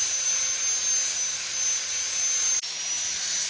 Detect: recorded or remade recorded